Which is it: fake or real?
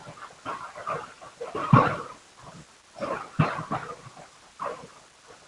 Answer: real